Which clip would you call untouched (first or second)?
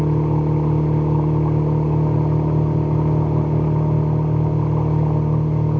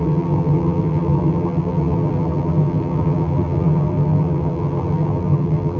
first